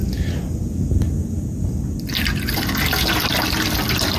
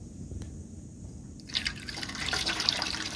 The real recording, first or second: first